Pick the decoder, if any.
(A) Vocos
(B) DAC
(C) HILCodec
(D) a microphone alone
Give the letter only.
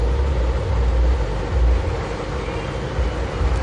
D